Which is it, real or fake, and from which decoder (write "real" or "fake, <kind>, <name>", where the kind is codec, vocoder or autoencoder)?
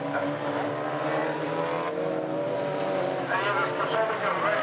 real